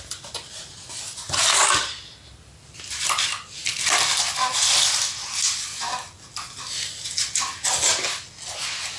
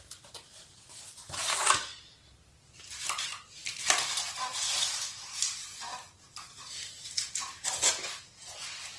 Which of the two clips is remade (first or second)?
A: second